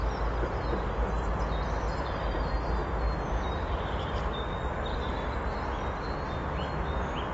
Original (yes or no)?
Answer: yes